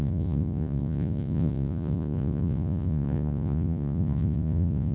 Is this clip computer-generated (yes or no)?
yes